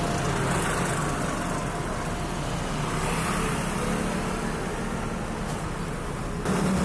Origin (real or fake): real